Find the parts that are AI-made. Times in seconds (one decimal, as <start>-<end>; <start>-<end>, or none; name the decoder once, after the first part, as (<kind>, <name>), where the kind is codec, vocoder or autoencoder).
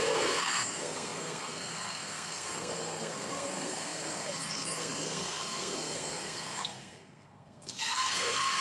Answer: 0.0-8.6 (codec, SNAC)